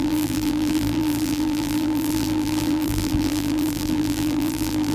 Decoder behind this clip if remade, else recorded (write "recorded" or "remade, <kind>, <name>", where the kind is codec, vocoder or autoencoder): remade, vocoder, BigVGAN v2